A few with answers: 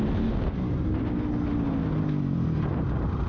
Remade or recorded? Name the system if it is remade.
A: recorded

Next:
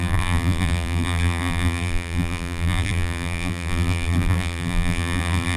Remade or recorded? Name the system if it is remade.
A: remade, vocoder, BigVGAN v2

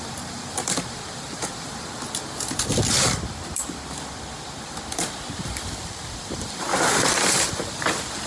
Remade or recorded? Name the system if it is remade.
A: remade, vocoder, BigVGAN v2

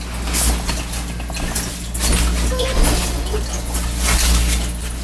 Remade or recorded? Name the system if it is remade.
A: recorded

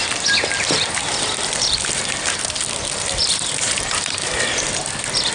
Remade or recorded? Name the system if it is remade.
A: remade, vocoder, BigVGAN v2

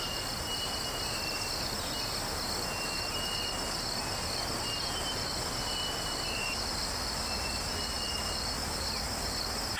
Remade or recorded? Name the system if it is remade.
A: recorded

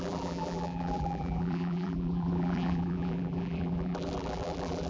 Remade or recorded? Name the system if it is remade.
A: remade, vocoder, BigVGAN v2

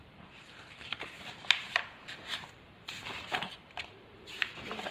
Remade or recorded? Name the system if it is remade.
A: remade, vocoder, BigVGAN v2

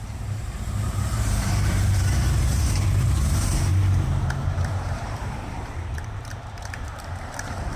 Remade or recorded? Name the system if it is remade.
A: remade, vocoder, BigVGAN v2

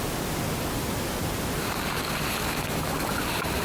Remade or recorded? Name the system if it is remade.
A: recorded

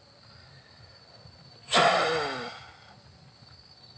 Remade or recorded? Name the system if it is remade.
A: recorded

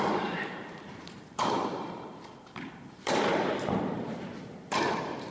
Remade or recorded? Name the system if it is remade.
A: remade, vocoder, BigVGAN v2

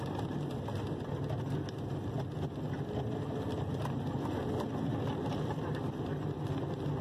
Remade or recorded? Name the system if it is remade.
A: recorded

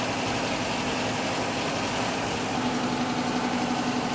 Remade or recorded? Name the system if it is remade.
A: recorded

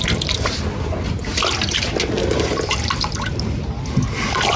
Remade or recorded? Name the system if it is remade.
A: recorded